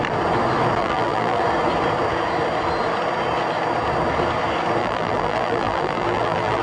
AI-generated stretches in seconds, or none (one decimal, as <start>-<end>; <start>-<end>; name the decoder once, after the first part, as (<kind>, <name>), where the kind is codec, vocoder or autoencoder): 0.8-1.4 (vocoder, BigVGAN v2); 4.8-6.6